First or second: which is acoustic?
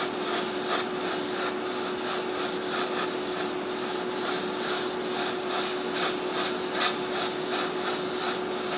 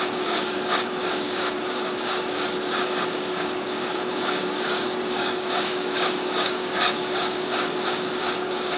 first